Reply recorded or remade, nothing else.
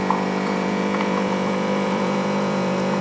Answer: remade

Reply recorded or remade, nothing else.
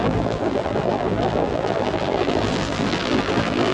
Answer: remade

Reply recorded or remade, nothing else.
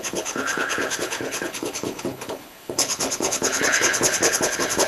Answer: remade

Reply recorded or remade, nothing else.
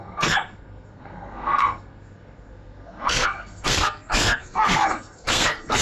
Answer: remade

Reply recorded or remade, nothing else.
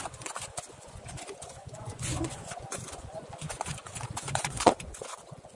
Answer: remade